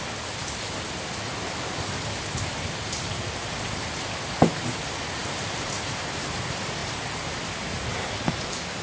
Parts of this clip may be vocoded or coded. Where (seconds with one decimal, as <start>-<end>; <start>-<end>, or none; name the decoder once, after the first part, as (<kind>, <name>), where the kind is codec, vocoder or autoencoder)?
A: none